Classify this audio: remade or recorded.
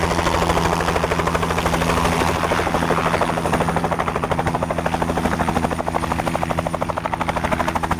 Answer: recorded